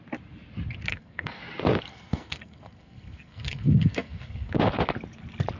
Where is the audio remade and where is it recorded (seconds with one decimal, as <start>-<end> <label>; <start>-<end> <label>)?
0.0-0.9 recorded; 0.9-1.4 remade; 1.4-1.9 recorded; 1.9-4.5 remade; 4.5-5.6 recorded